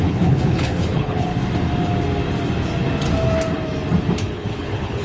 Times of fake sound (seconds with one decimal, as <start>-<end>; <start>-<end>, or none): 0.0-1.3; 4.3-5.0